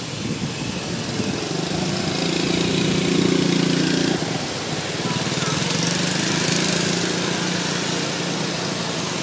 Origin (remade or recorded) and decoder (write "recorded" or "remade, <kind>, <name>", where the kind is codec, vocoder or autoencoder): recorded